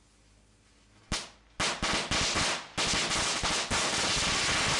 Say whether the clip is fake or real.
real